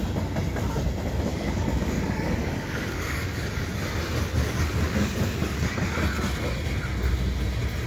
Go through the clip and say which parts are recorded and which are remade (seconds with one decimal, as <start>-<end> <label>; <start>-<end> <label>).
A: 0.0-1.3 recorded; 1.3-3.7 remade; 3.7-4.4 recorded; 4.4-5.8 remade; 5.8-7.9 recorded